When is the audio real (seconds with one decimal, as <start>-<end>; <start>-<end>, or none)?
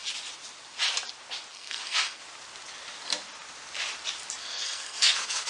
0.0-1.5; 2.2-4.4